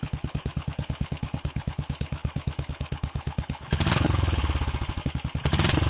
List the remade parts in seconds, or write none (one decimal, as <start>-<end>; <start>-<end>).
0.0-4.4